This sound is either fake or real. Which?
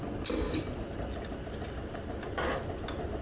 real